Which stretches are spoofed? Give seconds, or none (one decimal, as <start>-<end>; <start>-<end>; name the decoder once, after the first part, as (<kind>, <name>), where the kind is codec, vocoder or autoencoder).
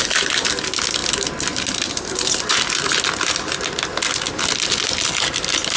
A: none